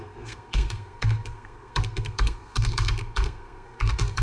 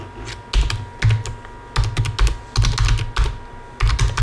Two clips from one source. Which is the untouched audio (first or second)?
second